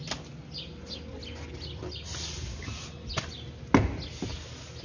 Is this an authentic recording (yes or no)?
yes